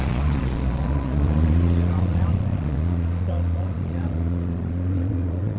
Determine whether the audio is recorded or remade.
remade